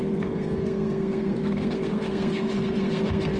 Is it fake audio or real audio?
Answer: fake